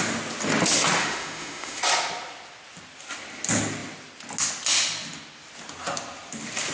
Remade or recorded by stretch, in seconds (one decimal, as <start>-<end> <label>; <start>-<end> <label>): 0.0-1.0 recorded; 1.0-1.8 remade; 1.8-6.7 recorded